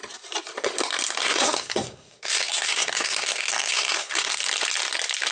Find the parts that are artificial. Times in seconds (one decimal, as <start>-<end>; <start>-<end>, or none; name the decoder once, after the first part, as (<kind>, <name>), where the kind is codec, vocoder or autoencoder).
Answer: 1.2-4.4 (codec, SNAC)